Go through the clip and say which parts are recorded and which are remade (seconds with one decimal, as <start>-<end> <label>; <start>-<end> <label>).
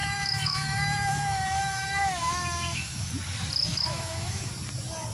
0.0-3.1 remade; 3.1-3.7 recorded; 3.7-4.5 remade; 4.5-5.1 recorded